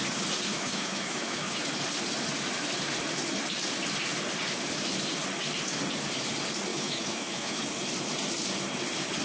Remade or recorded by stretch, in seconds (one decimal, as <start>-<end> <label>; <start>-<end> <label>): 0.0-0.5 recorded; 0.5-1.7 remade; 1.7-6.7 recorded; 6.7-7.6 remade; 7.6-9.2 recorded

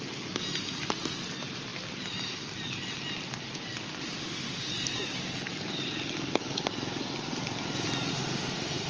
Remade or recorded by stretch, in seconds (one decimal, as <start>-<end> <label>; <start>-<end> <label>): 0.0-4.2 recorded; 4.2-4.7 remade; 4.7-8.1 recorded; 8.1-8.9 remade

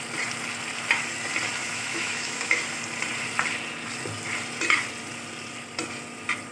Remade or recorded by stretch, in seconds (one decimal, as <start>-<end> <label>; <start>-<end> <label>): 0.0-1.6 recorded; 1.6-2.6 remade; 2.6-6.5 recorded